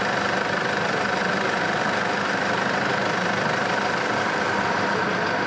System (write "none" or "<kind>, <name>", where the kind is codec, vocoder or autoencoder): none